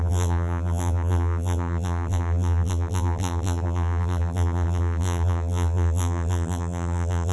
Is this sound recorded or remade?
remade